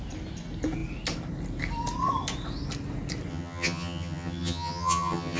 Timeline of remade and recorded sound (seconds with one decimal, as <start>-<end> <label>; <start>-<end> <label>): 0.0-3.3 recorded; 3.3-5.4 remade